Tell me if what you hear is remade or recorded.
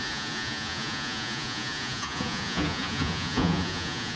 remade